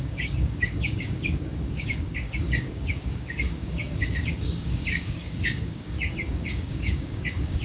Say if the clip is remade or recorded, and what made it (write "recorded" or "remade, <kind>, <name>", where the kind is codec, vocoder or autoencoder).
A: remade, codec, DAC